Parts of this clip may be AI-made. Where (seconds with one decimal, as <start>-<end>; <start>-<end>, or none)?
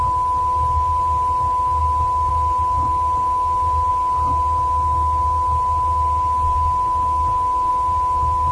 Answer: none